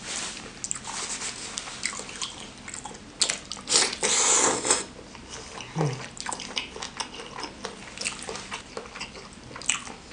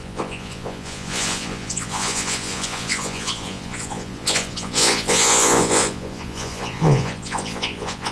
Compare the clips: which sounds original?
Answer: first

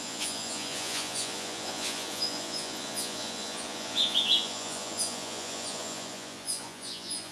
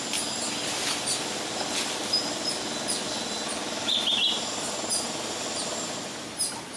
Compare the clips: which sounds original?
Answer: second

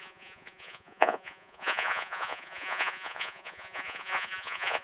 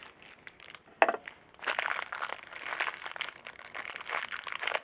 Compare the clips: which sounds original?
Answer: second